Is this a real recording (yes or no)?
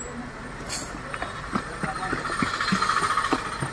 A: yes